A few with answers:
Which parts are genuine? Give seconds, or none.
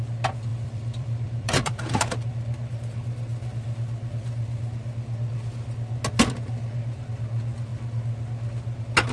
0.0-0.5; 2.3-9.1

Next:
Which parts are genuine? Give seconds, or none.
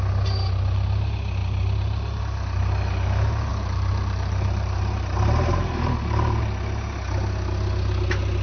0.0-1.4; 2.2-3.5; 6.4-8.4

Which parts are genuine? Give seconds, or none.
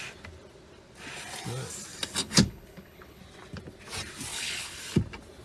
0.0-2.2; 3.2-4.3; 4.8-5.4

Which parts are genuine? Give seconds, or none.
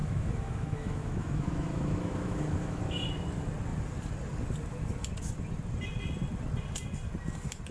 2.8-7.7